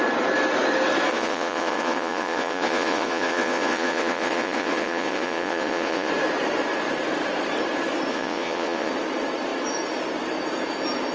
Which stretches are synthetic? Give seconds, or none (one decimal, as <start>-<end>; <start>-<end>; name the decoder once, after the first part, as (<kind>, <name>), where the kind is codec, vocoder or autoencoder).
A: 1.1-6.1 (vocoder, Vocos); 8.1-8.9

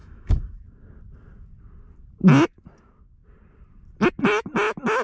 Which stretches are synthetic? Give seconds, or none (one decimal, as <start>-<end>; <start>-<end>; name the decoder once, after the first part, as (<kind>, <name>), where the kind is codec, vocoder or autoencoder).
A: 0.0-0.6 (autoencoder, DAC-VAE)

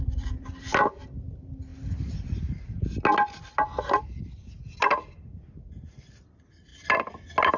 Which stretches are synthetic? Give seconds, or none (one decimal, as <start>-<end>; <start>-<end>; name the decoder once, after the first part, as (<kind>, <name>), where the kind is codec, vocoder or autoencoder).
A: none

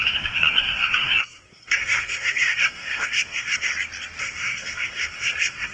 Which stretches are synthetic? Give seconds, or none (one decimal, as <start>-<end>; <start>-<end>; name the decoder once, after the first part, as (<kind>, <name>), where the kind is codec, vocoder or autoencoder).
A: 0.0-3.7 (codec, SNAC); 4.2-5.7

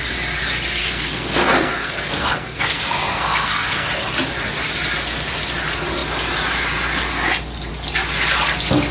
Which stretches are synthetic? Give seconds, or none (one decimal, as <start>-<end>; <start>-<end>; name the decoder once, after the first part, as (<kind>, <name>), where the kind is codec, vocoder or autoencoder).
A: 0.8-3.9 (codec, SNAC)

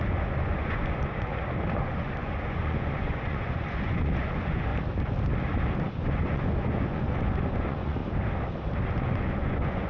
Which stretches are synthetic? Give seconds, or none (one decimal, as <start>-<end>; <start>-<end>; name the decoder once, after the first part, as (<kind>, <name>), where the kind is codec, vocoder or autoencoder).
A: 0.0-1.3 (vocoder, Vocos); 1.8-4.7; 5.9-8.0; 8.9-9.9

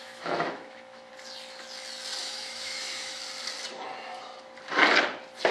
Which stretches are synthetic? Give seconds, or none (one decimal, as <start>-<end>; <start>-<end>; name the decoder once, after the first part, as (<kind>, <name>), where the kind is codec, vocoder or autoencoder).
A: 0.0-1.1 (autoencoder, DAC-VAE); 2.2-3.2

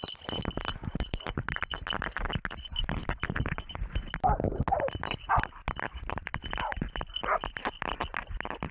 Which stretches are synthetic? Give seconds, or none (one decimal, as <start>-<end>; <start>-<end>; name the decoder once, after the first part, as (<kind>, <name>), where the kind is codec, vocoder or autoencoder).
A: 0.7-1.4 (vocoder, BigVGAN v2)